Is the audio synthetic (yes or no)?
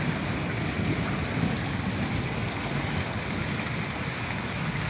no